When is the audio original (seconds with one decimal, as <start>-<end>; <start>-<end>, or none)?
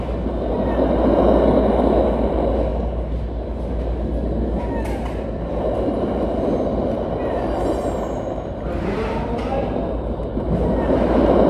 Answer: 0.0-11.5